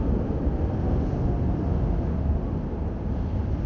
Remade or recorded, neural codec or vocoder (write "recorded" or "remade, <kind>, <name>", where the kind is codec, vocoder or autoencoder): recorded